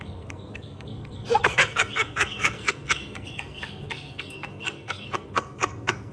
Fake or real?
fake